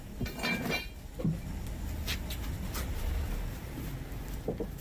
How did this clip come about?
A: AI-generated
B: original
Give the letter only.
B